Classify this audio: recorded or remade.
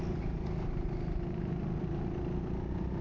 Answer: recorded